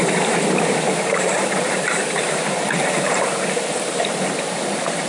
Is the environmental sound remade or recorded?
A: remade